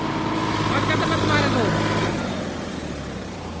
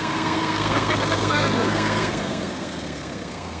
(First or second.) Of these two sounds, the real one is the first